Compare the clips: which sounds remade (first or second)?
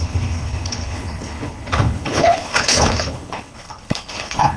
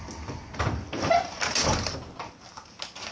first